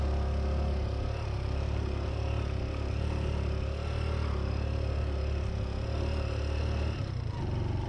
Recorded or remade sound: recorded